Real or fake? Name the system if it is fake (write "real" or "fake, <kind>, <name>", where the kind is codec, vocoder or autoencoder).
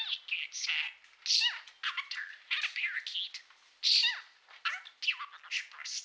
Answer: real